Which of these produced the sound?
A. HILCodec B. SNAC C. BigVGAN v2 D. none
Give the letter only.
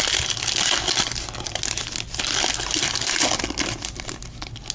D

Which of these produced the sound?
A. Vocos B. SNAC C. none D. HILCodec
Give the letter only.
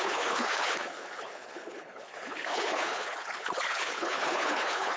D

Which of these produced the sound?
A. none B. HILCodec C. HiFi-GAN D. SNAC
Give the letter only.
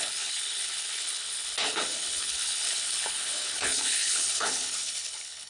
B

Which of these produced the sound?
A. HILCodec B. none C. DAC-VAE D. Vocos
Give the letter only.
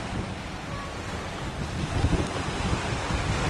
B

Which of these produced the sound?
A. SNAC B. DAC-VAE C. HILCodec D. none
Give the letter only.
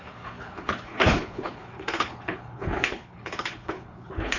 C